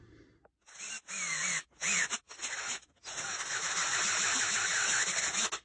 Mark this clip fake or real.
real